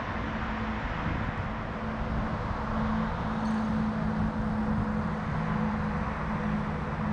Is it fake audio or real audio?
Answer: real